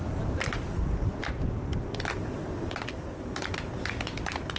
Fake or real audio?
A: real